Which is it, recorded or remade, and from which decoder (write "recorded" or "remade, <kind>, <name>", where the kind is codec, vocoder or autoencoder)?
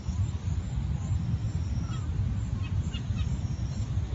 recorded